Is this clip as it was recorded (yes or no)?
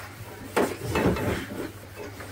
yes